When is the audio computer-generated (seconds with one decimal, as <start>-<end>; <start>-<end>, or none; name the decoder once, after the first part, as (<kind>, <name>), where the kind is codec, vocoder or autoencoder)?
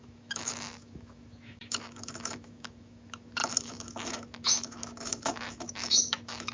0.0-6.5 (autoencoder, DAC-VAE)